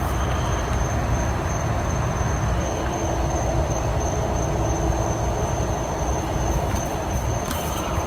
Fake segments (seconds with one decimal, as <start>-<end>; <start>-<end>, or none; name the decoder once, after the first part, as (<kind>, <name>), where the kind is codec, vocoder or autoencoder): none